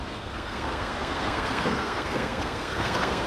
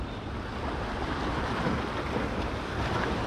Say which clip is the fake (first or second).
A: first